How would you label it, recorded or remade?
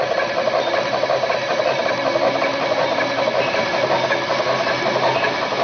recorded